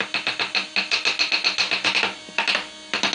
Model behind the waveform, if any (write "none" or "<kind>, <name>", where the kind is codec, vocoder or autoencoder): none